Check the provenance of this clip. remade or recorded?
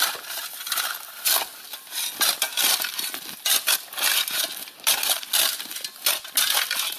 recorded